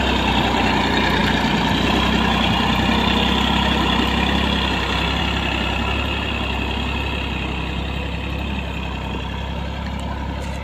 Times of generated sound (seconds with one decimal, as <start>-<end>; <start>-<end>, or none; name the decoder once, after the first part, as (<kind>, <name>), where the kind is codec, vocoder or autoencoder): none